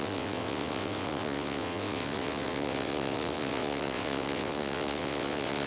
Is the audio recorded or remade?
remade